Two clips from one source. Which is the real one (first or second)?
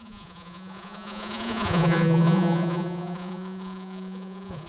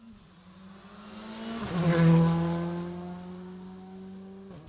second